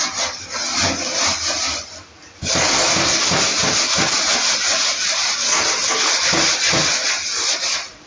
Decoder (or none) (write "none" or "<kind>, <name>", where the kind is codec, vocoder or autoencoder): none